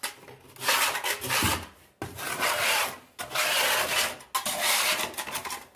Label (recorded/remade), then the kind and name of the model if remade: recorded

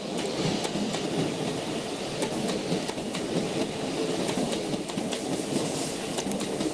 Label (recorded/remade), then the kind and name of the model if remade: recorded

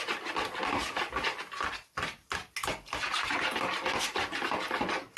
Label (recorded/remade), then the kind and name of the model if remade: recorded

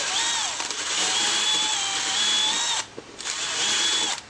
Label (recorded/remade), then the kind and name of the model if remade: recorded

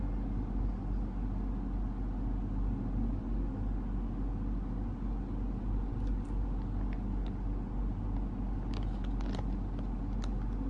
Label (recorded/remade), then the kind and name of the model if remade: recorded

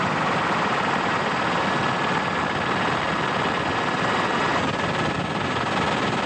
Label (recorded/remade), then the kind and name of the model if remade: recorded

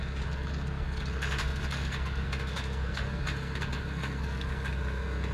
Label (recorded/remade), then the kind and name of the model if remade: remade, codec, SNAC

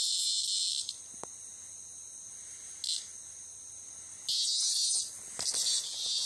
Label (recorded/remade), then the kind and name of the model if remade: recorded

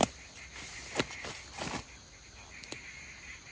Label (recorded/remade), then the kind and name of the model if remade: recorded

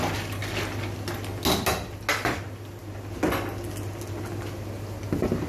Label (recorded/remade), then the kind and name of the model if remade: recorded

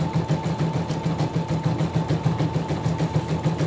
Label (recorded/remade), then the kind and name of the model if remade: recorded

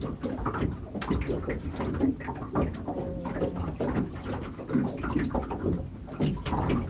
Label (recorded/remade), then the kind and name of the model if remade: recorded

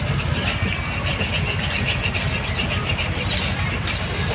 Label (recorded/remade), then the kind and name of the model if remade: recorded